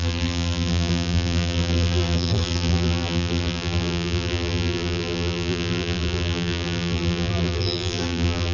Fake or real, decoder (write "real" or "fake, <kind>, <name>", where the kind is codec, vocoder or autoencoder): fake, vocoder, BigVGAN v2